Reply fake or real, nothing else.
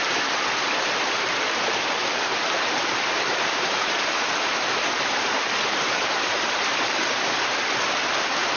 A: fake